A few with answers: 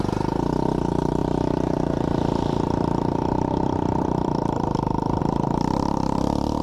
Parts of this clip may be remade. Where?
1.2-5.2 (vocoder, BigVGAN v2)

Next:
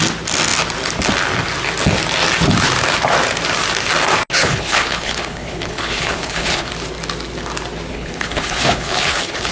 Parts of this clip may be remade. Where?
4.4-6.7 (codec, HILCodec); 7.9-9.5

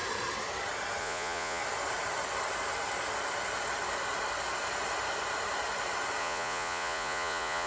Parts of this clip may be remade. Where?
1.0-1.6 (vocoder, Vocos); 6.2-7.7

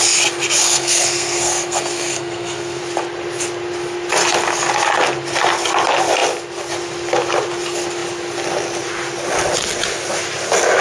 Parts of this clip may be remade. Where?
0.6-2.8 (codec, SNAC)

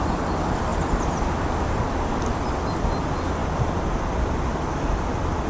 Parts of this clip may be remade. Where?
none

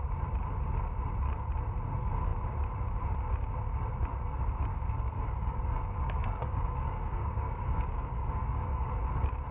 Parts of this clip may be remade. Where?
4.7-8.9 (codec, DAC)

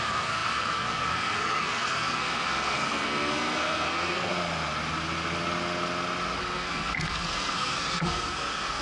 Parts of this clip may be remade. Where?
0.0-4.3 (codec, SNAC); 6.4-8.8